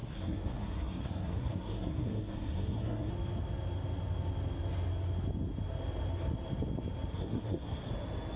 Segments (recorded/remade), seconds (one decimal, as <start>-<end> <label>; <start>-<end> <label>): 0.0-3.1 remade; 3.1-7.1 recorded; 7.1-7.9 remade; 7.9-8.4 recorded